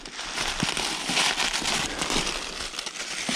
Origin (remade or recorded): recorded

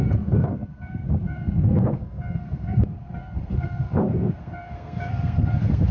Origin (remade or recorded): remade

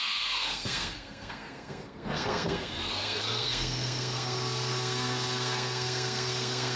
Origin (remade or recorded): remade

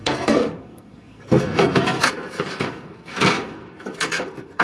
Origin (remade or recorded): remade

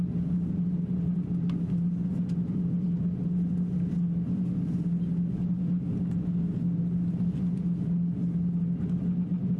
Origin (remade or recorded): recorded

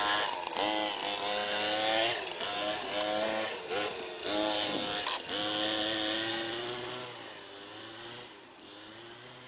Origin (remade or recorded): recorded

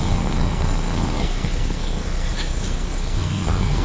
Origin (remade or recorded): remade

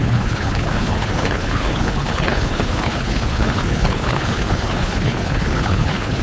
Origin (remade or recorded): remade